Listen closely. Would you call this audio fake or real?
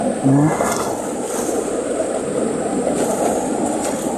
real